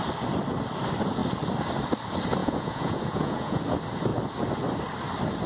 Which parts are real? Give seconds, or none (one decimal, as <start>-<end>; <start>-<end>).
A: 0.0-2.4; 3.6-5.5